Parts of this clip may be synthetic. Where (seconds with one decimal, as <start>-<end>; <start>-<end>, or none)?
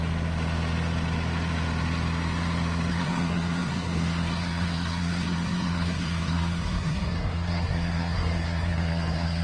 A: 2.9-9.4